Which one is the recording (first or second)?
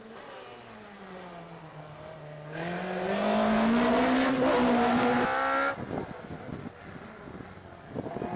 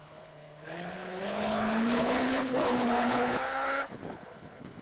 first